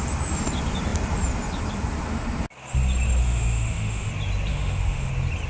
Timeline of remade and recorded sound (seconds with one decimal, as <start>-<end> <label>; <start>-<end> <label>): 0.0-3.2 recorded; 3.2-4.1 remade; 4.1-4.5 recorded; 4.5-5.1 remade; 5.1-5.5 recorded